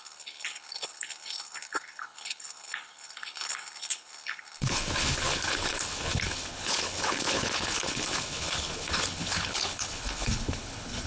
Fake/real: fake